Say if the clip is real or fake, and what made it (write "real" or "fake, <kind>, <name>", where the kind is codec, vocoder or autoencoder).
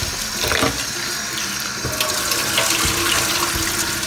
real